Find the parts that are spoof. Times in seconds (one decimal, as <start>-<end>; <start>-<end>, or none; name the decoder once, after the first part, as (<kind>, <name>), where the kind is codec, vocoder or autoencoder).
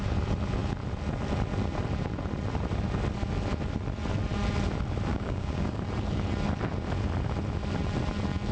5.1-5.8 (codec, DAC)